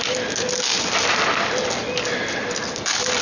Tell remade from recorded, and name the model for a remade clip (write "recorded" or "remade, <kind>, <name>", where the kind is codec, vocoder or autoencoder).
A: recorded